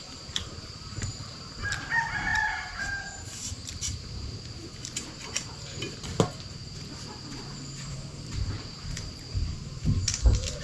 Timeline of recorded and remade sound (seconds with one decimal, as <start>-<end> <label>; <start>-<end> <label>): 0.0-10.6 remade